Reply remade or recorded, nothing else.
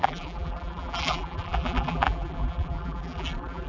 remade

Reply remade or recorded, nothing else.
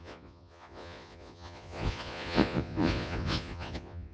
remade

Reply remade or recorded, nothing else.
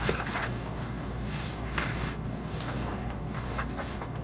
remade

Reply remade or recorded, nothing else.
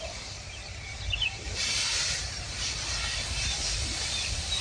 remade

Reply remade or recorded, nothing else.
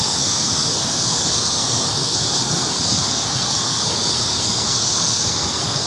remade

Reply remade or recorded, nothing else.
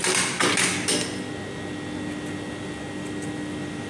recorded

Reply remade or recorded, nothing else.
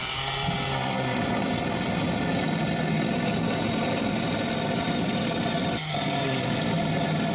recorded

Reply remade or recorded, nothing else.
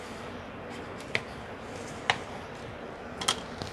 recorded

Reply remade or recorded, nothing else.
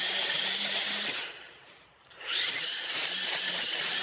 remade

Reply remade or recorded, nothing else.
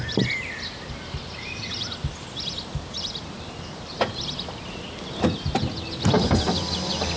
recorded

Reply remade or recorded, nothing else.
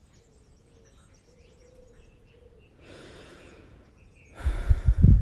remade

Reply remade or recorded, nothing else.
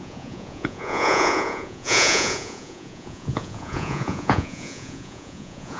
remade